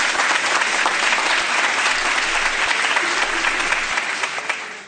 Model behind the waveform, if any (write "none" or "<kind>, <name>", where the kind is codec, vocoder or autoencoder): none